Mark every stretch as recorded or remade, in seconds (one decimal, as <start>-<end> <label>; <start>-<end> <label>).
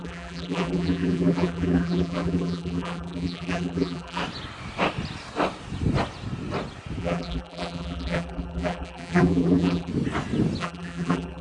0.0-4.2 remade; 4.2-7.0 recorded; 7.0-9.9 remade; 9.9-10.6 recorded; 10.6-11.4 remade